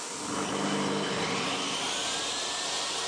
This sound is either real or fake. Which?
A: real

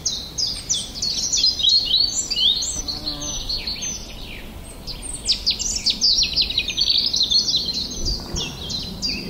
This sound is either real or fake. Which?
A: real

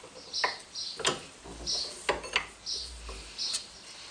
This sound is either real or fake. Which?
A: real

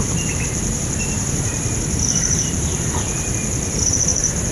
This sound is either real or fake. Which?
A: fake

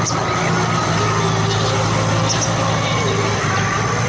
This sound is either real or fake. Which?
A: real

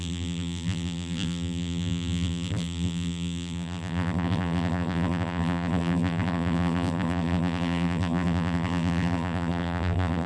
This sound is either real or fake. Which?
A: fake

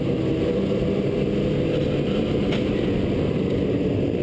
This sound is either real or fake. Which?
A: real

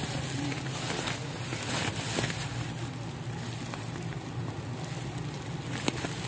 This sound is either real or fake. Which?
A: real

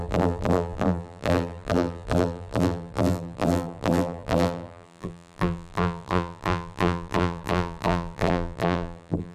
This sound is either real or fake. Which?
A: fake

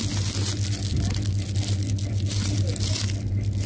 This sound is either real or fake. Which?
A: real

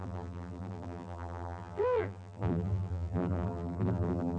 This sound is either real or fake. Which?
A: fake